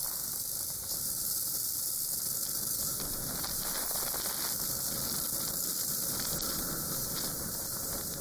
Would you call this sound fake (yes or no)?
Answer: no